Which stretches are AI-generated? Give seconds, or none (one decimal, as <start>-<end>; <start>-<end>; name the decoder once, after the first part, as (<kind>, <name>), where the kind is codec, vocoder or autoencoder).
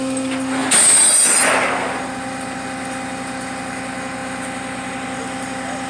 none